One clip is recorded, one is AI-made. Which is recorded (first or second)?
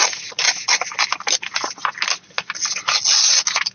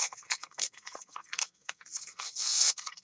first